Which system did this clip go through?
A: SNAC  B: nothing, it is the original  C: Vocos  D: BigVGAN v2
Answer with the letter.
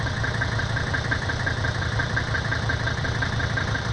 D